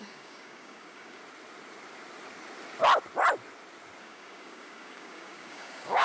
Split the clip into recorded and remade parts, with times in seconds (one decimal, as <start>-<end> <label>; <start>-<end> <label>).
0.0-1.2 remade; 1.2-4.0 recorded; 4.0-6.0 remade